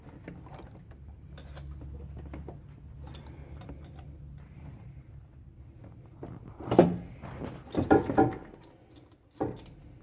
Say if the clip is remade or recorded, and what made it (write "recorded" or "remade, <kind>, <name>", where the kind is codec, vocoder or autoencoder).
recorded